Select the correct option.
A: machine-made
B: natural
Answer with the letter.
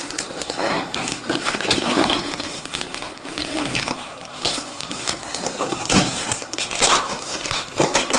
A